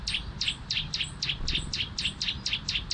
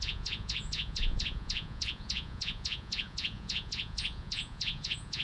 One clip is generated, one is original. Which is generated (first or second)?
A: second